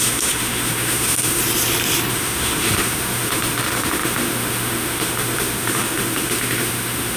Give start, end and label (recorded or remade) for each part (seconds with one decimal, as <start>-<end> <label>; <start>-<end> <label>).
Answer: 0.0-1.4 remade; 1.4-2.1 recorded; 2.1-7.2 remade